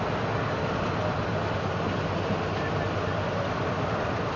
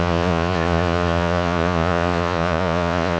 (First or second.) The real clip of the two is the first